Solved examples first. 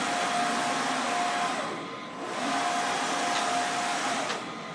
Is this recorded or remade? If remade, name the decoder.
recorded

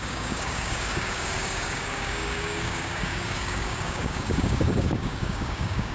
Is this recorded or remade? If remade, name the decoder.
remade, codec, DAC